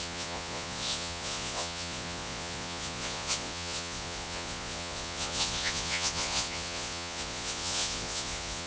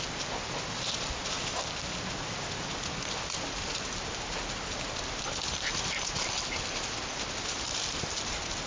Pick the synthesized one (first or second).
first